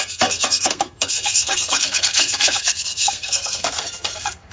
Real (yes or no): no